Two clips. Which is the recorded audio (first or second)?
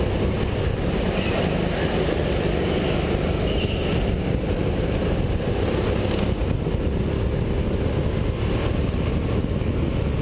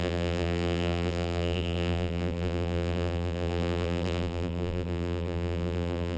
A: first